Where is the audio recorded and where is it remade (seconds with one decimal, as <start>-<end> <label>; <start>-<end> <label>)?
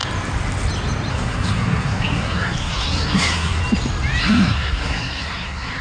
0.0-1.1 recorded; 1.1-3.6 remade; 3.6-4.2 recorded; 4.2-5.8 remade